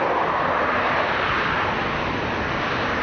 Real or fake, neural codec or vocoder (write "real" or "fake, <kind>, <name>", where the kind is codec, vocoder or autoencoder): real